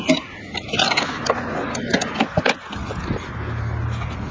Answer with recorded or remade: recorded